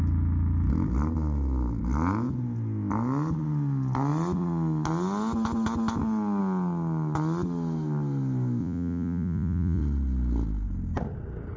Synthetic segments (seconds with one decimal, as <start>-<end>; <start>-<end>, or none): 8.6-9.8

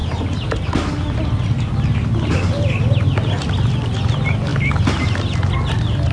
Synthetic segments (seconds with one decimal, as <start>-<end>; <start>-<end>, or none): none

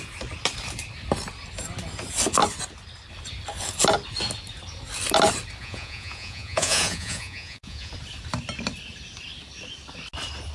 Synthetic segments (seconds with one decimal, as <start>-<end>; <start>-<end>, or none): 5.6-7.9